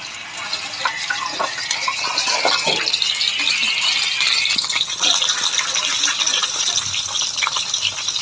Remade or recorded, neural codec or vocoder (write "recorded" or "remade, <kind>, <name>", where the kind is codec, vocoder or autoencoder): recorded